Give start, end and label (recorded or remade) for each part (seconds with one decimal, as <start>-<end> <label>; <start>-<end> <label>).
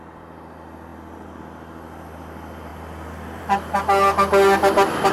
0.0-5.1 recorded